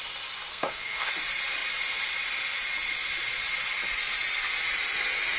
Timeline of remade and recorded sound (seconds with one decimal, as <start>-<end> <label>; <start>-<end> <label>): 0.0-0.5 recorded; 0.5-1.1 remade; 1.1-5.4 recorded